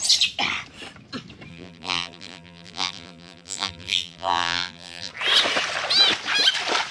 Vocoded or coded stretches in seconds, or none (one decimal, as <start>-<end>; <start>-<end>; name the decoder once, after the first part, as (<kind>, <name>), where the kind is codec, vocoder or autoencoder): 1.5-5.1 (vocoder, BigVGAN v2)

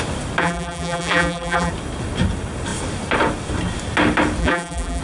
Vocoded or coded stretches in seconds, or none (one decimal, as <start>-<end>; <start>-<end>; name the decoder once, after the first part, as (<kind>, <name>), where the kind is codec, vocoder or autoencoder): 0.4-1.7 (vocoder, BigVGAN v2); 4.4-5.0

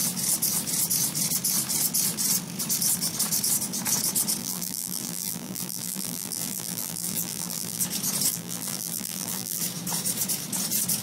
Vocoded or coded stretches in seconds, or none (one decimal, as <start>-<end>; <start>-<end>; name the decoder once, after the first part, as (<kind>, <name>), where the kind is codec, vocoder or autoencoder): 4.4-7.8 (vocoder, BigVGAN v2); 8.3-9.6